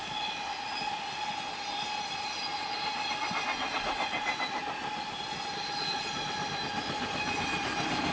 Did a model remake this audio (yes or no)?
no